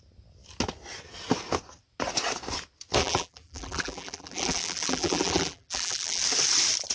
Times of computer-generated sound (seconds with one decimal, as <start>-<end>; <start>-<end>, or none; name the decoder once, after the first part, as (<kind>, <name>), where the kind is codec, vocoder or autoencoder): 3.0-6.2 (vocoder, BigVGAN v2)